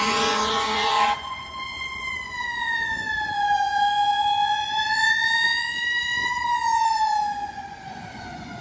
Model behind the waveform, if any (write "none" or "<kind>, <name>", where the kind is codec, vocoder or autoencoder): vocoder, Vocos